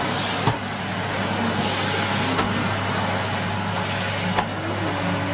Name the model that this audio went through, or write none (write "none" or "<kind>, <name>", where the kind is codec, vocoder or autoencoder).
none